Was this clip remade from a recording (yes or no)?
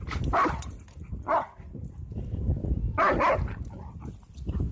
no